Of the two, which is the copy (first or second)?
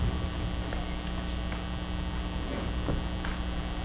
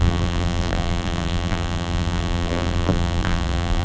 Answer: second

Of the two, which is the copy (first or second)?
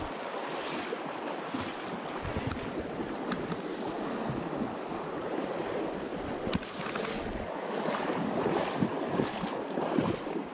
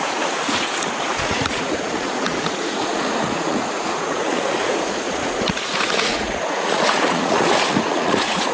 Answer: second